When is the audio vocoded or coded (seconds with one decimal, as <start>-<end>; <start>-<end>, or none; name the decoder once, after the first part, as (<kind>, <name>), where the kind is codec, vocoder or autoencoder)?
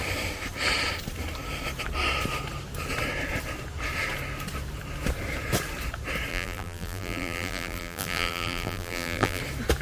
6.3-9.4 (vocoder, BigVGAN v2)